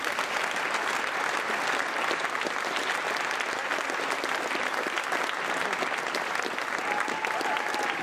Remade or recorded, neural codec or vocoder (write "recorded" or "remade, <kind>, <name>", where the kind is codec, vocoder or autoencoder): recorded